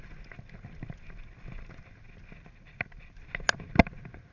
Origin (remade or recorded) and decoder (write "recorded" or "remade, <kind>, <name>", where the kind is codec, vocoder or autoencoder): recorded